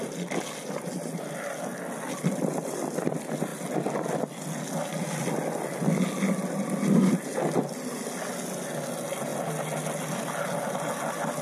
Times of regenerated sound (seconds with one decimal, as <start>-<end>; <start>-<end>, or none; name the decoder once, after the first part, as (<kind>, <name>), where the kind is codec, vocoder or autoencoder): none